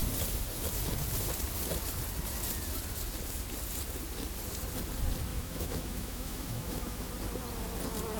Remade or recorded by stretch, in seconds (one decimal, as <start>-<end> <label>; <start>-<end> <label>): 0.0-5.3 recorded; 5.3-7.1 remade; 7.1-8.2 recorded